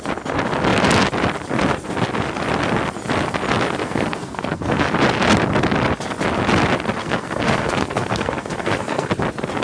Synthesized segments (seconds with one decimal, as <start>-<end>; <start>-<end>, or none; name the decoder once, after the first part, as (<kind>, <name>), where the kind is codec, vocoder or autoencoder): 3.8-4.9 (codec, SNAC); 7.0-9.1